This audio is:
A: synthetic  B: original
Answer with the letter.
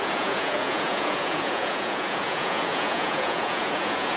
A